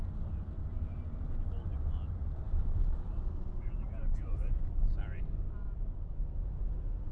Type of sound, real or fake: real